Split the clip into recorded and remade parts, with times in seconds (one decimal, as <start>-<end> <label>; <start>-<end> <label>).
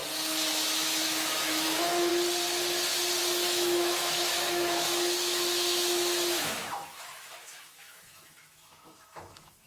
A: 0.0-0.5 recorded; 0.5-2.1 remade; 2.1-3.2 recorded; 3.2-9.7 remade